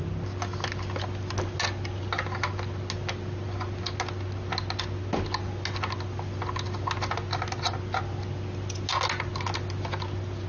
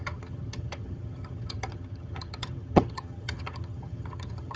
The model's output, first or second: second